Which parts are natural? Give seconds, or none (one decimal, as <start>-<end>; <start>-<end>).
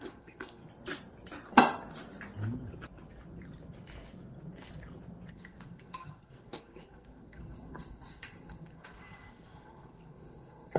0.6-5.3